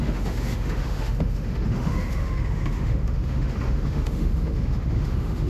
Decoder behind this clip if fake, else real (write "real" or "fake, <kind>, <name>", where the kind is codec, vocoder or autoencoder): fake, autoencoder, DAC-VAE